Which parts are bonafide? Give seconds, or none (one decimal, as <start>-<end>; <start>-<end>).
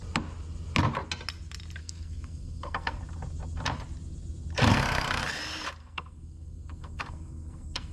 0.0-1.8; 3.0-4.7; 5.2-5.8